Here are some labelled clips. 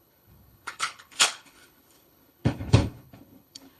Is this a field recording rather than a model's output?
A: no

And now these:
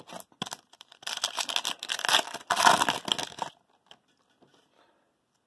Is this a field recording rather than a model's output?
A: yes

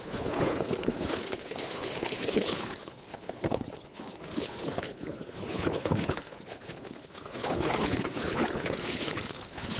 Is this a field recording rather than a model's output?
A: no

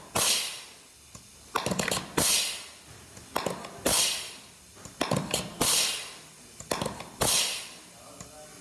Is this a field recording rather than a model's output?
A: yes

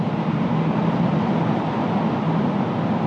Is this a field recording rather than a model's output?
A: yes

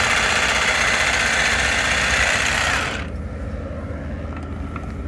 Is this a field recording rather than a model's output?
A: yes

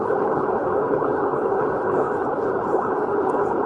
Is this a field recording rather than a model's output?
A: no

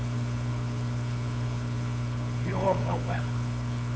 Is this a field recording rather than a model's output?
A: no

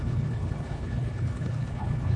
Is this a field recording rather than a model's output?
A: no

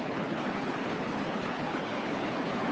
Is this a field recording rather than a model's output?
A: no